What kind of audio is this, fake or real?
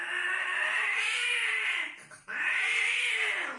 fake